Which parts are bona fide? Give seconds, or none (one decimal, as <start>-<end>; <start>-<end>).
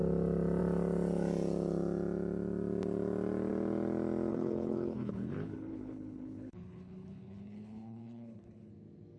0.0-4.3; 8.7-9.2